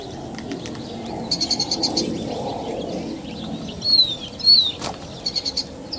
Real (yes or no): yes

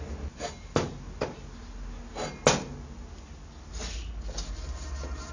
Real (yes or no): yes